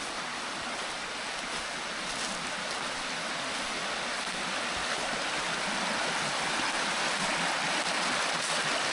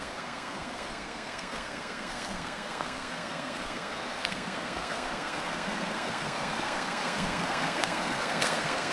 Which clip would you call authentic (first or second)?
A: first